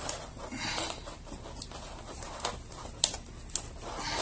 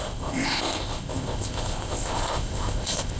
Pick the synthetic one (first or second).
second